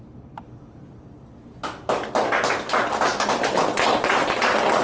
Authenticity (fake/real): real